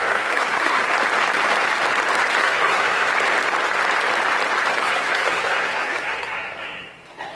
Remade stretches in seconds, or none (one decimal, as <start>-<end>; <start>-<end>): 0.0-0.8; 2.4-3.1; 4.7-7.3